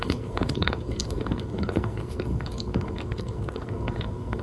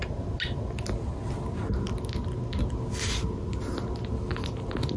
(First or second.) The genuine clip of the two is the second